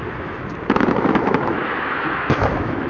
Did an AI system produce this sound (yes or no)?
yes